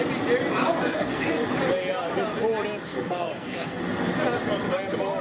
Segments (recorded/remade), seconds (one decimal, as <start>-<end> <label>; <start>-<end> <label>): 0.0-0.6 recorded; 0.6-1.3 remade; 1.3-2.9 recorded; 2.9-3.8 remade; 3.8-5.2 recorded